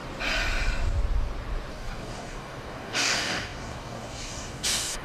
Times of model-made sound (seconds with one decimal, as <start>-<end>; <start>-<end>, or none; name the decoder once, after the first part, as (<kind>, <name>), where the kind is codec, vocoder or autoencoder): 1.7-5.0 (codec, DAC)